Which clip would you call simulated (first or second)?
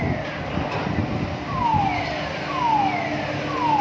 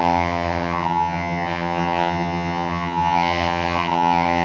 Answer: second